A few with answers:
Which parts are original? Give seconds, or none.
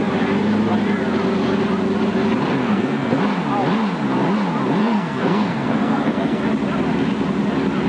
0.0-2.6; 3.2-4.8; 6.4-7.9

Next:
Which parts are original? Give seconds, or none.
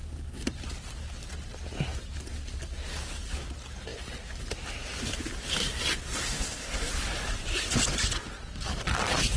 0.0-6.2; 6.9-9.4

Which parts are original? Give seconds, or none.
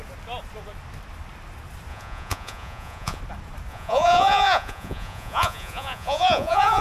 0.0-1.9; 3.2-3.7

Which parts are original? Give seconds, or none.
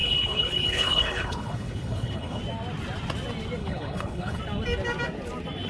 2.4-3.6; 4.4-5.7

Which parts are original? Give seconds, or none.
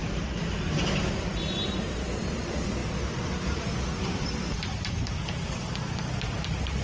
0.0-6.8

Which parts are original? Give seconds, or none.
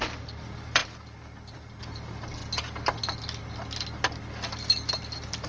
0.0-5.5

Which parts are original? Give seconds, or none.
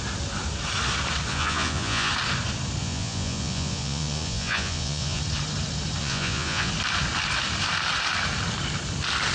0.0-1.3; 2.1-2.8; 5.2-6.0; 6.7-9.3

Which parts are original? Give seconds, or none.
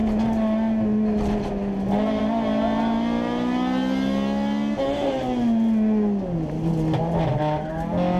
0.0-8.2